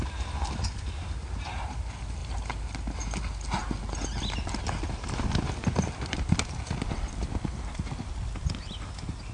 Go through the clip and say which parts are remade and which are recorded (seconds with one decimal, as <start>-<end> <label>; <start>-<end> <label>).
0.0-9.3 recorded